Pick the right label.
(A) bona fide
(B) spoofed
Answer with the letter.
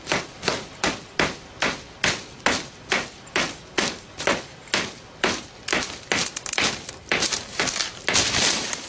A